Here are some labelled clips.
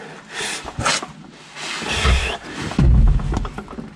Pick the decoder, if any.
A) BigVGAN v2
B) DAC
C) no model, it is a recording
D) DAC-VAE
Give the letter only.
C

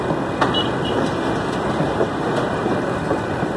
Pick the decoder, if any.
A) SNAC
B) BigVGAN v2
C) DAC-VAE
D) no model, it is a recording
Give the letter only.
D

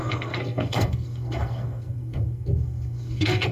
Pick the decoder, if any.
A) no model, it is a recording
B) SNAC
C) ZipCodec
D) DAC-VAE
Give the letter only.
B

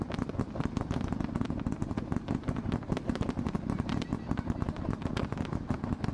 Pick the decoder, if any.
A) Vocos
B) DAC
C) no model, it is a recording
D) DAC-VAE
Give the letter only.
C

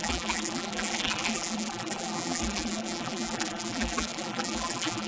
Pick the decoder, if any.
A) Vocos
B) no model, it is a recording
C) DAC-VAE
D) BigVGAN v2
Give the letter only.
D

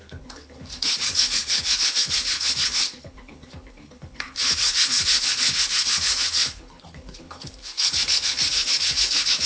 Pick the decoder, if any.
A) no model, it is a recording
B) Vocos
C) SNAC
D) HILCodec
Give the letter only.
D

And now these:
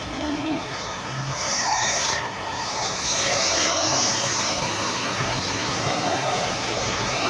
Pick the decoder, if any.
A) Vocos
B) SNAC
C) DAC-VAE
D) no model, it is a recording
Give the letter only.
B